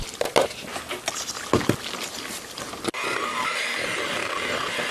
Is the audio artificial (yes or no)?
no